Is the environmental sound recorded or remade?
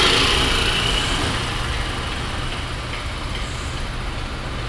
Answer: recorded